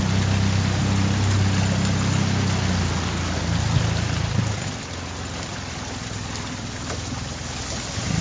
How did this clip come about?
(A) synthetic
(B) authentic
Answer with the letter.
B